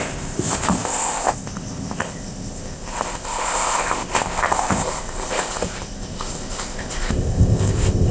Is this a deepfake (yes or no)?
yes